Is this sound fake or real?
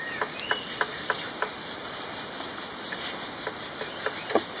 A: real